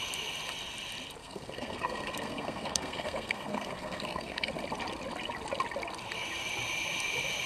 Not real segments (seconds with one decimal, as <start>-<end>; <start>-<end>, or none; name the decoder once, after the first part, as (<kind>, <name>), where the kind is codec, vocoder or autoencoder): 1.2-4.5 (codec, SNAC)